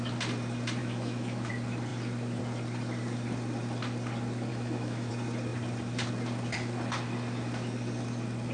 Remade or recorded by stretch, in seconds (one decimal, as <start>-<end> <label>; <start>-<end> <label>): 0.0-0.8 recorded; 0.8-1.5 remade; 1.5-4.5 recorded; 4.5-5.1 remade; 5.1-8.5 recorded